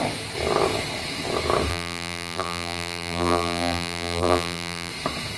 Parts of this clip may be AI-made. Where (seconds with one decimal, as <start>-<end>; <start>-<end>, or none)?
1.7-4.9